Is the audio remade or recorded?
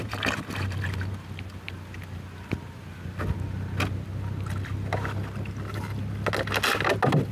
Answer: recorded